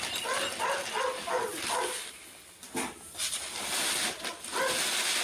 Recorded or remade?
recorded